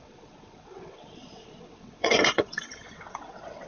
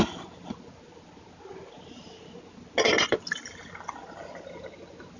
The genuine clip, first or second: second